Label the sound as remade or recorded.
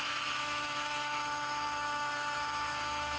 remade